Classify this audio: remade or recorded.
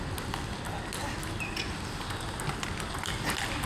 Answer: recorded